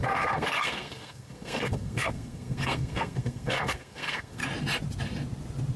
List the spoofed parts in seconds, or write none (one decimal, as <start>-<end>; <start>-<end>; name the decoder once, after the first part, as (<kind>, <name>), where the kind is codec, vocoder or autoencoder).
0.0-4.4 (codec, SNAC)